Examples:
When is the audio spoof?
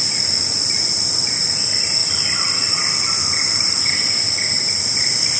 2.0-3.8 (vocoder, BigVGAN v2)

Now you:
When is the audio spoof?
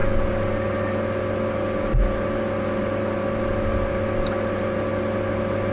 none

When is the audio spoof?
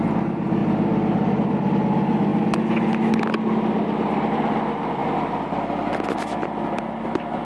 0.0-0.6 (vocoder, BigVGAN v2); 1.5-2.3; 4.3-5.0; 6.2-7.4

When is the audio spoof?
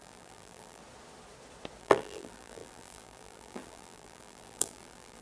0.0-0.8 (vocoder, BigVGAN v2); 1.8-5.2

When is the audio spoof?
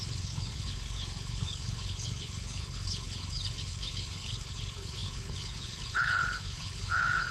0.0-7.3 (codec, HILCodec)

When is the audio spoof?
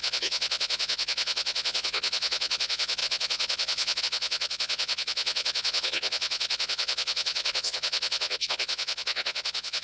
0.0-9.8 (vocoder, Vocos)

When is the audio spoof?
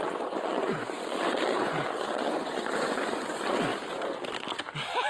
0.0-3.7 (vocoder, Vocos)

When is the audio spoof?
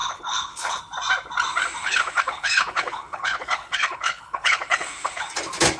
0.0-0.8 (codec, HILCodec); 1.8-5.3